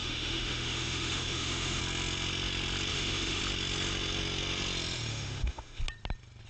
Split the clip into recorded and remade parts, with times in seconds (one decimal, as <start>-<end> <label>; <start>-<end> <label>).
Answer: 0.0-1.8 remade; 1.8-2.9 recorded; 2.9-3.4 remade; 3.4-5.1 recorded; 5.1-5.8 remade; 5.8-6.5 recorded